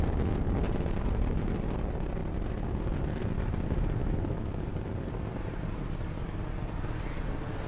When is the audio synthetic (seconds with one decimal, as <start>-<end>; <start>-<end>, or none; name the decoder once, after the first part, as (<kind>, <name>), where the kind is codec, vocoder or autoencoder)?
4.0-4.6 (autoencoder, DAC-VAE)